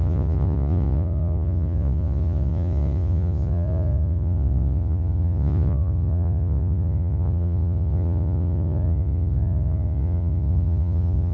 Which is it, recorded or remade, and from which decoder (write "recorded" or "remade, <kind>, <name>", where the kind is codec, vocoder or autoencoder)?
remade, vocoder, Vocos